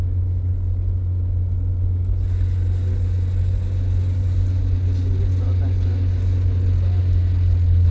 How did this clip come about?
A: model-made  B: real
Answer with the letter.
B